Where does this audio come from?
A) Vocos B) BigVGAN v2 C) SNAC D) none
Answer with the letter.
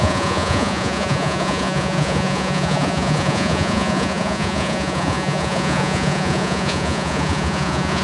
A